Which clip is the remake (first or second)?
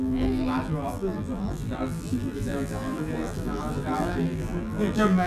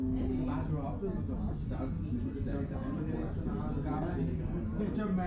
first